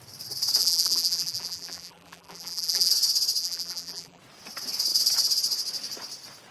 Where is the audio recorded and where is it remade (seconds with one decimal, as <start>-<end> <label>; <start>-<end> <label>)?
0.0-0.6 recorded; 0.6-2.9 remade; 2.9-3.4 recorded; 3.4-4.2 remade; 4.2-6.5 recorded